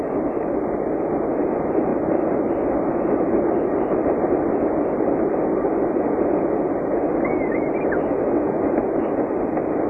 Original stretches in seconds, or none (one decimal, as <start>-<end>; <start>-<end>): 0.0-9.9